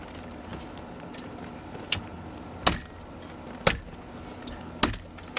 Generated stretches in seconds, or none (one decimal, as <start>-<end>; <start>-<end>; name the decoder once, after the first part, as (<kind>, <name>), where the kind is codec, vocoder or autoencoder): none